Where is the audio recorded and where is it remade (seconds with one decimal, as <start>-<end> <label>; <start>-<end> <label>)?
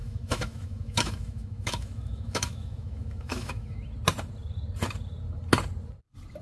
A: 0.0-3.8 remade; 3.8-6.4 recorded